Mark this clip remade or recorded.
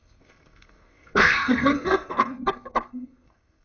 remade